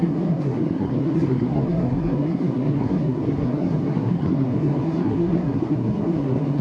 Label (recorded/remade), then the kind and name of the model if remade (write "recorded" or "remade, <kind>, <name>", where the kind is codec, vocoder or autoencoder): remade, codec, SNAC